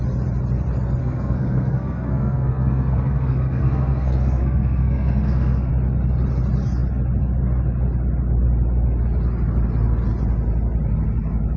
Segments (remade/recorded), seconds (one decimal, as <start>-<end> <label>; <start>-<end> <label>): 0.0-1.0 recorded; 1.0-5.7 remade; 5.7-11.6 recorded

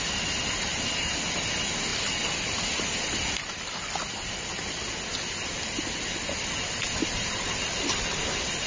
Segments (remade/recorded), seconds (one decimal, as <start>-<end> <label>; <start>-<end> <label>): 0.0-8.7 recorded

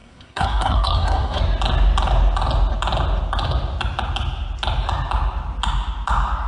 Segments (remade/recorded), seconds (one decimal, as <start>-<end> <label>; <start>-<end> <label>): 0.0-1.4 remade; 1.4-6.5 recorded

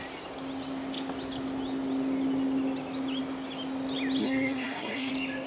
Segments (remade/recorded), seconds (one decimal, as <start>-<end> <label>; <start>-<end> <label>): 0.0-4.2 recorded; 4.2-5.1 remade; 5.1-5.5 recorded

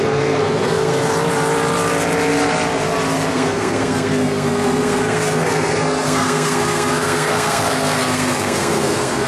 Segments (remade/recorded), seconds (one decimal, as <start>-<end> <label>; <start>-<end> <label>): 0.0-1.1 remade; 1.1-3.3 recorded; 3.3-9.3 remade

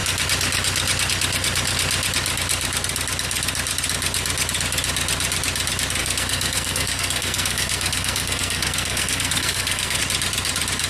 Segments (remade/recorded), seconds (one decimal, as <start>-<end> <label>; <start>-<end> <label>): 0.0-6.0 recorded; 6.0-10.0 remade; 10.0-10.9 recorded

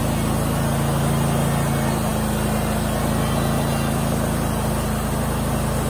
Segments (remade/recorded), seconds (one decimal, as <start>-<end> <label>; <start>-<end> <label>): 0.0-5.9 recorded